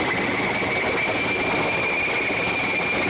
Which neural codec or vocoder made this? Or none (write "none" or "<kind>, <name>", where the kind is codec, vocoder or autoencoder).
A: none